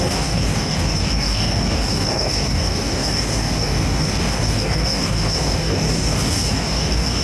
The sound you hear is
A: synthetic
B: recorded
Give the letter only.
A